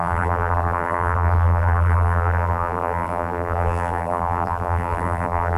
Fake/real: fake